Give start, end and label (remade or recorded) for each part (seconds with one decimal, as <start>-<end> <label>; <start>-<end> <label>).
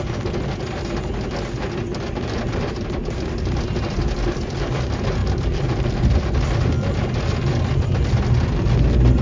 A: 0.0-5.2 recorded; 5.2-6.6 remade; 6.6-9.2 recorded